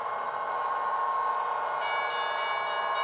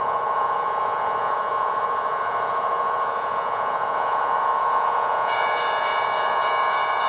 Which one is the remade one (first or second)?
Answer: second